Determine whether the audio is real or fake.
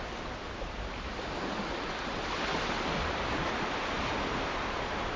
fake